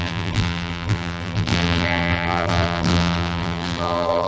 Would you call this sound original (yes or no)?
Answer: no